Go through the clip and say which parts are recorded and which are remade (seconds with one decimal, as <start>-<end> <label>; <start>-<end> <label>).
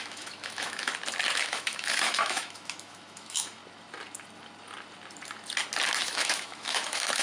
0.0-0.9 remade; 0.9-1.4 recorded; 1.4-3.6 remade; 3.6-6.0 recorded; 6.0-7.2 remade